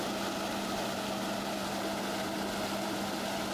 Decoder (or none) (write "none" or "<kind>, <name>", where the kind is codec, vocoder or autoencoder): none